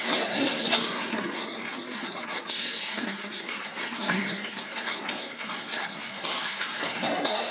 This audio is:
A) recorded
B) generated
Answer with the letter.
B